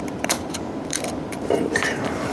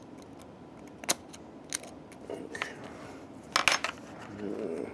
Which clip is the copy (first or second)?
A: first